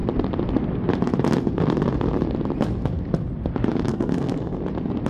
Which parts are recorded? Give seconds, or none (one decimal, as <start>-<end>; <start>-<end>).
0.0-3.9; 4.6-5.1